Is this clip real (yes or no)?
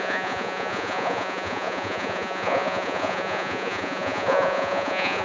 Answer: no